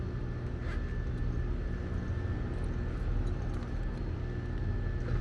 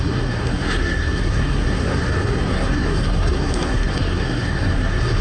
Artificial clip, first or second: second